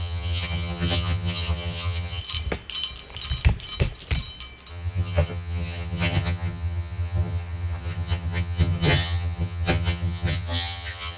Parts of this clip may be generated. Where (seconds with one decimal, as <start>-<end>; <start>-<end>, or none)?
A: 0.0-2.2; 4.7-11.2